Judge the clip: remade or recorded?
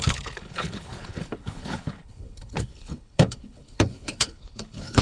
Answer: remade